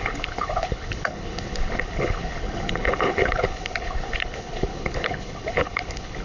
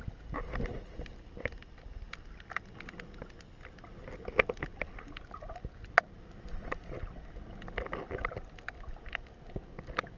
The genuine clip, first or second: second